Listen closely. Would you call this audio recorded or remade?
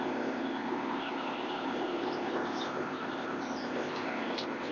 remade